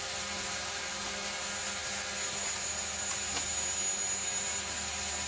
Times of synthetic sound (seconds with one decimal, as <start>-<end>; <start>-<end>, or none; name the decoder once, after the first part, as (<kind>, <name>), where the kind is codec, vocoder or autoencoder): none